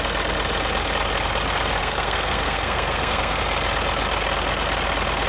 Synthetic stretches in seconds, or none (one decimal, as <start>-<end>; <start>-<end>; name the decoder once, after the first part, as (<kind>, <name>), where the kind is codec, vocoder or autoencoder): 1.8-3.4 (codec, SNAC)